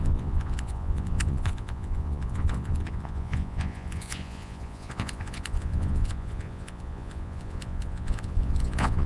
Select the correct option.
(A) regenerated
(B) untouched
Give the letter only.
A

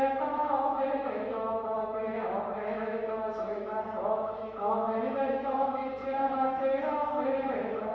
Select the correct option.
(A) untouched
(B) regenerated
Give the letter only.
B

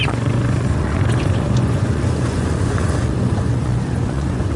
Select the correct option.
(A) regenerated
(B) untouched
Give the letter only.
A